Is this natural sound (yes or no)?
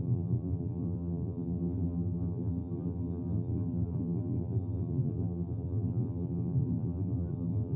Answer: no